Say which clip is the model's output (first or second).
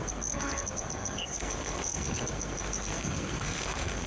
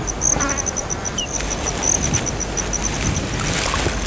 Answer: first